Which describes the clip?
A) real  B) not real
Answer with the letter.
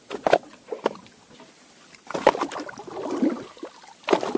A